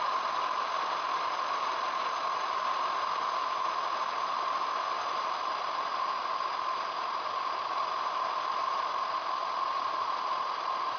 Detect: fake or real real